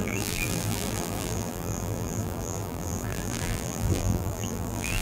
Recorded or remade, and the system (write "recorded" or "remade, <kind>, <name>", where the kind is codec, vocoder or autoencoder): remade, vocoder, BigVGAN v2